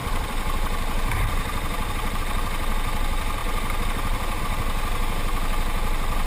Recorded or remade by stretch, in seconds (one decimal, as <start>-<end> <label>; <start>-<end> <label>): 0.0-2.2 remade; 2.2-6.3 recorded